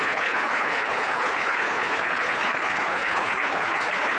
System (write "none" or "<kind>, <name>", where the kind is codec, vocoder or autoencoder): codec, HILCodec